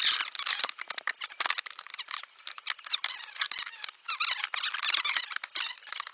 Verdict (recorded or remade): recorded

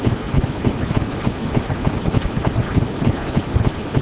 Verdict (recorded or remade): recorded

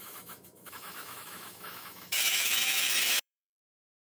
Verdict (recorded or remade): remade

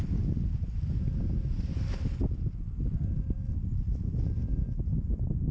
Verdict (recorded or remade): recorded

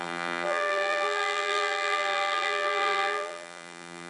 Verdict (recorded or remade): remade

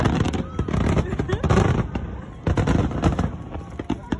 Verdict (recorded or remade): recorded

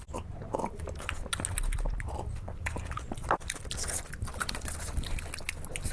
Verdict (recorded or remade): recorded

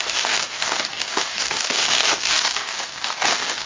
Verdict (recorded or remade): remade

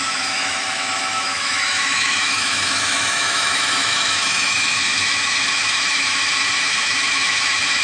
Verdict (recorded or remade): remade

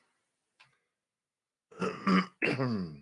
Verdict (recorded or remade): recorded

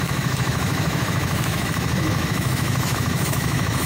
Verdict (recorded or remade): remade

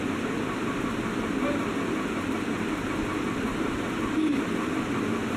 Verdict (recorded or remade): recorded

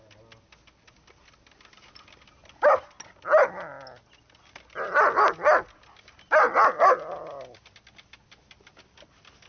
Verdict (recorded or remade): recorded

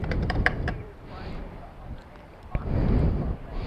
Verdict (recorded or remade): remade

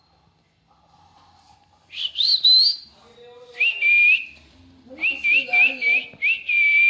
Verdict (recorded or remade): recorded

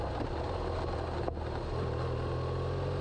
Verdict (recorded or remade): recorded